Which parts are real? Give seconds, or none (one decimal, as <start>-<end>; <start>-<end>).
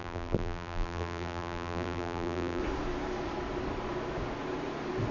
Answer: 2.6-5.1